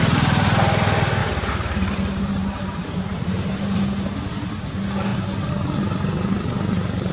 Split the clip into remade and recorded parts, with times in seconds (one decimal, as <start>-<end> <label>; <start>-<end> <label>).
0.0-1.2 recorded; 1.2-3.8 remade; 3.8-7.1 recorded